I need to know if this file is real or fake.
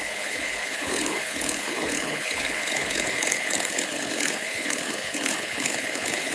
fake